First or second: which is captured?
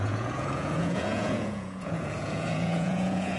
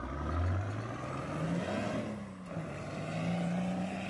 second